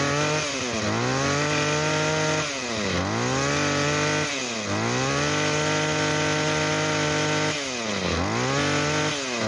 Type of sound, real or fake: real